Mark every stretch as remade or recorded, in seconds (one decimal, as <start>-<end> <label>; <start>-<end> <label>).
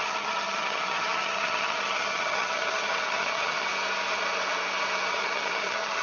0.0-3.7 remade; 3.7-5.1 recorded; 5.1-6.0 remade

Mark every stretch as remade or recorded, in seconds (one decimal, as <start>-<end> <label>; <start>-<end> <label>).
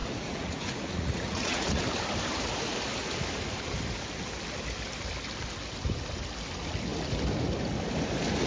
0.0-1.8 remade; 1.8-8.5 recorded